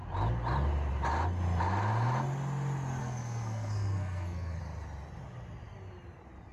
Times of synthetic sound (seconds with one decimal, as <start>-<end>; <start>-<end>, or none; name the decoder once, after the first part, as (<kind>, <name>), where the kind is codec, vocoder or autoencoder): 3.0-4.6 (codec, SNAC)